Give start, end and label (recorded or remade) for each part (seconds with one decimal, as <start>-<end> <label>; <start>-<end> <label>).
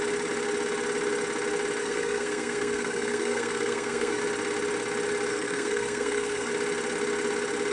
0.0-1.8 recorded; 1.8-4.2 remade; 4.2-5.3 recorded; 5.3-6.5 remade; 6.5-7.7 recorded